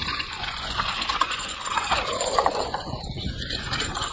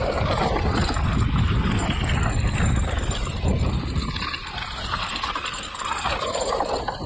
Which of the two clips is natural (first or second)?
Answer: second